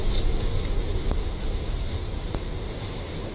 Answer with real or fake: real